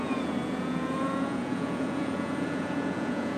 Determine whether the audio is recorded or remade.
remade